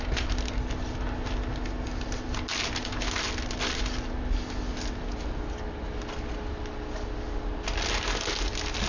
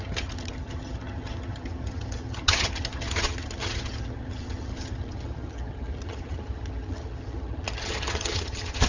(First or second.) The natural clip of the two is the first